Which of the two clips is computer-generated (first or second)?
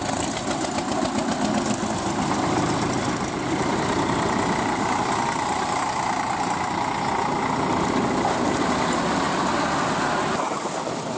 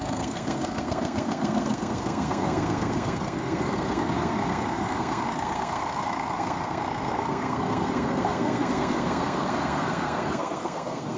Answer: second